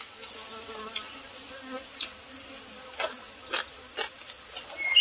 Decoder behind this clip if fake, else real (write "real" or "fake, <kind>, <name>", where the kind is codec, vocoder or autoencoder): real